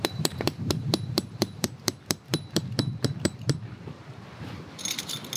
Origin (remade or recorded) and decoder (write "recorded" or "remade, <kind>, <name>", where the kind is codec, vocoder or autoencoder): remade, vocoder, BigVGAN v2